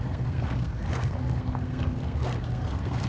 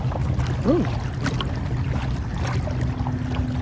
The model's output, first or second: first